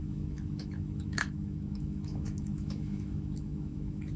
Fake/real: fake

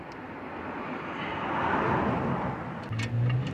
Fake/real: real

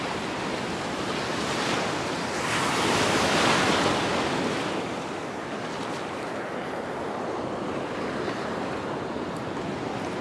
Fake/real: real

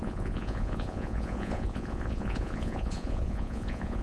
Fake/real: fake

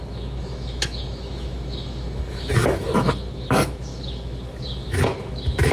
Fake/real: fake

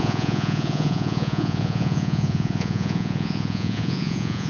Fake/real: fake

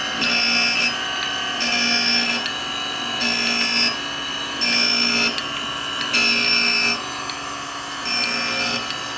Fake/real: real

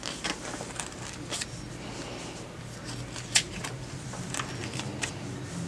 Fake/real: real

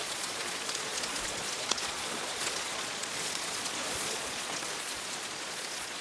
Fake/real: fake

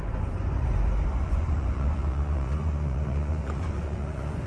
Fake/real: fake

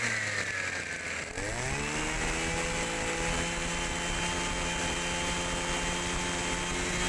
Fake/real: real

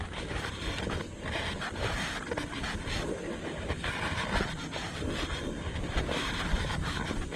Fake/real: real